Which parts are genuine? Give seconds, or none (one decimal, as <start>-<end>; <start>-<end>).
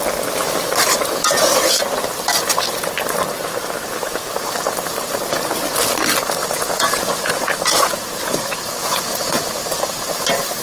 0.0-6.4; 9.5-10.6